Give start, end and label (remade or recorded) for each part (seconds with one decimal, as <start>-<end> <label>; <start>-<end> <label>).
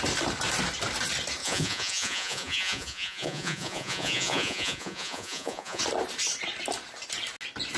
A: 0.0-1.4 recorded; 1.4-5.8 remade; 5.8-7.8 recorded